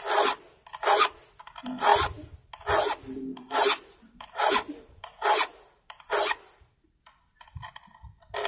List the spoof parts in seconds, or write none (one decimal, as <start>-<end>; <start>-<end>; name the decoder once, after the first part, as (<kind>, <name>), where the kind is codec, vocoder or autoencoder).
3.3-7.0 (vocoder, BigVGAN v2)